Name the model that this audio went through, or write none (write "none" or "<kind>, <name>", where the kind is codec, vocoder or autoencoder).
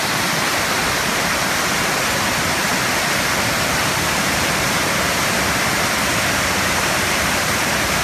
none